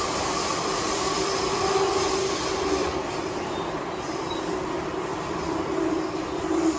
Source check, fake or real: fake